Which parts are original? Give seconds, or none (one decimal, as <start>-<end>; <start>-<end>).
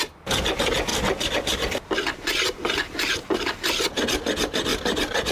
0.0-0.9; 3.8-4.7